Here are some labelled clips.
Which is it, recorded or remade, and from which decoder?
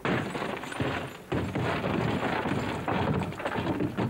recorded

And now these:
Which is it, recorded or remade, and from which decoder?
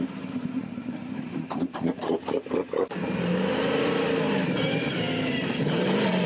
remade, vocoder, BigVGAN v2